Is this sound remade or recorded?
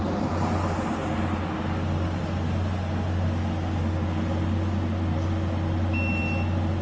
recorded